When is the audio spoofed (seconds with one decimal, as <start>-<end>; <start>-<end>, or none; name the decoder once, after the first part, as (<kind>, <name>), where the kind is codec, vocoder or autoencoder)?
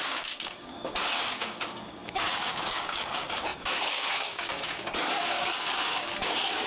0.0-6.7 (codec, DAC)